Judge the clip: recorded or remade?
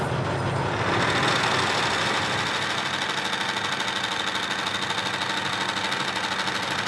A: recorded